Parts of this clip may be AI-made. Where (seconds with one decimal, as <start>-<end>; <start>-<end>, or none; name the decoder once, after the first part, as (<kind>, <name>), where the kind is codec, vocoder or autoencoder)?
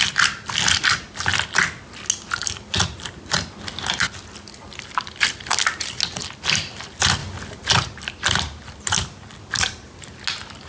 none